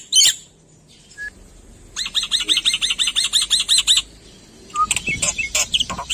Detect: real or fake real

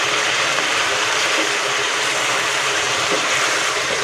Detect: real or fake fake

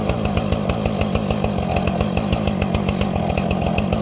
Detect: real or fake real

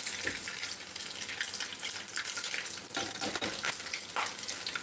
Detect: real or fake real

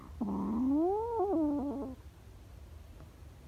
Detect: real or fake real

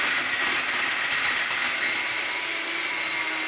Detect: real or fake real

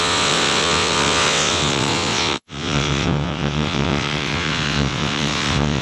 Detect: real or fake fake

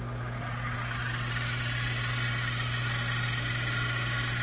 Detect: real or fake real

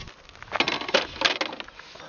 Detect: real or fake real